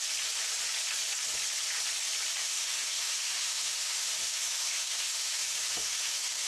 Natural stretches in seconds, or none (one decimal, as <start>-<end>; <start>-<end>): 0.0-2.4